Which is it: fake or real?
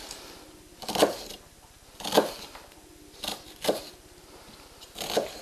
real